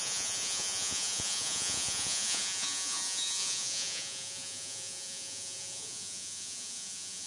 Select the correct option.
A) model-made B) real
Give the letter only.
A